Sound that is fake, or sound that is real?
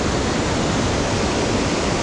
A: real